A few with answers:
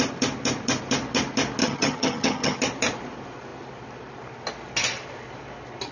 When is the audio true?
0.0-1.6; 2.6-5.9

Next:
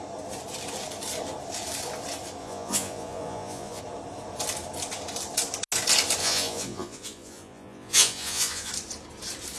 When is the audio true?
0.0-2.4; 3.8-6.2; 8.7-9.6

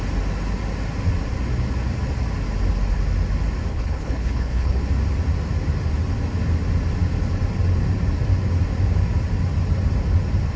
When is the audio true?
0.0-3.7; 4.8-10.6

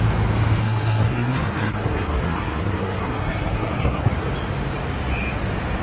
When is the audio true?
0.0-0.6; 4.1-5.8

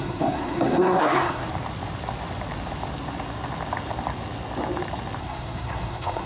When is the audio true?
1.4-5.2